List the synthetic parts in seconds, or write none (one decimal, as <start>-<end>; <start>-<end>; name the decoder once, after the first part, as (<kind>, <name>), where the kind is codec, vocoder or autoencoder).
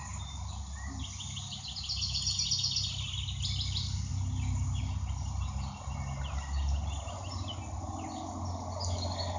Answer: none